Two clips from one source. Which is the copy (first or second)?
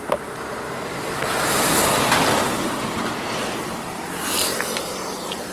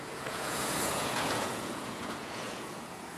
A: second